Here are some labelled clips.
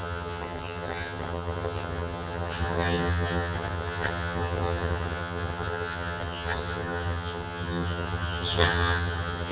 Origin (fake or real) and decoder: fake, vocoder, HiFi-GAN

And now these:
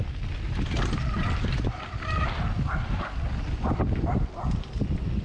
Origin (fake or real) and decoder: real